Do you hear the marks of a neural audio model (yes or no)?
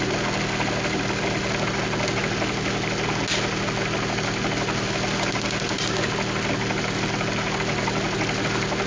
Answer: no